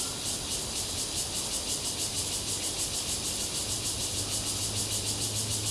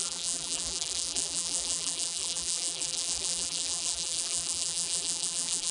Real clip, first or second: first